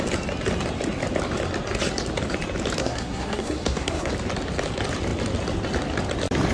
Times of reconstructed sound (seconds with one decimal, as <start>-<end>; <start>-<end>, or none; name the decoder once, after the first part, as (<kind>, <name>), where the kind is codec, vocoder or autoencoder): 2.8-4.1 (codec, SNAC)